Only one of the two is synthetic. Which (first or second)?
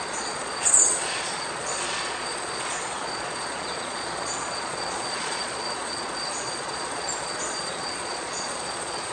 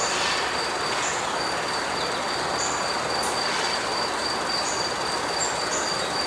first